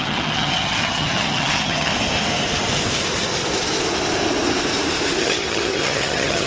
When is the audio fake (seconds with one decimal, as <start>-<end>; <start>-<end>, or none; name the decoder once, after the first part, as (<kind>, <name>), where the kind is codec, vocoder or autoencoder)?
0.0-1.9 (vocoder, HiFi-GAN); 5.2-6.5